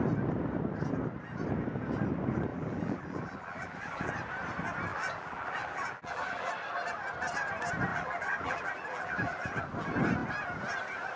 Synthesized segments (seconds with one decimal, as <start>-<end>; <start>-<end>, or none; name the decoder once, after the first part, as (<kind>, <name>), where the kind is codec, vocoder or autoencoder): 2.5-4.1 (vocoder, BigVGAN v2); 4.9-6.5; 7.9-9.6